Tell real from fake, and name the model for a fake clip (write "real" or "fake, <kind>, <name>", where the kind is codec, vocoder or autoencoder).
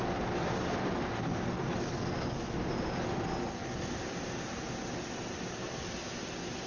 real